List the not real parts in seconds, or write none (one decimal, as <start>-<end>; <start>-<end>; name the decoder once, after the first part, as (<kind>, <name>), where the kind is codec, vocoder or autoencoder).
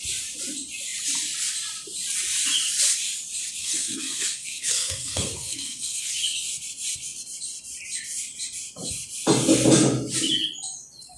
3.6-6.1 (codec, SNAC)